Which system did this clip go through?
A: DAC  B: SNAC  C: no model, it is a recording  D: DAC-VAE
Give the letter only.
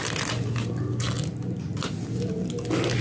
C